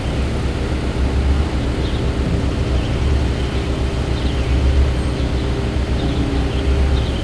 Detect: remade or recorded recorded